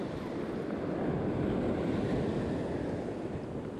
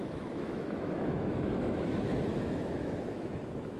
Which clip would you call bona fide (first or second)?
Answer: first